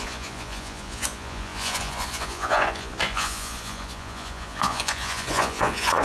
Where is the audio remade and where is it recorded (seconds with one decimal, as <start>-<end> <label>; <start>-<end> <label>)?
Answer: 0.0-6.0 remade